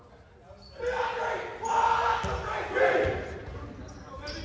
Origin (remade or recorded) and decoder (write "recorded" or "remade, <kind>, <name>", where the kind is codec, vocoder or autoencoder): recorded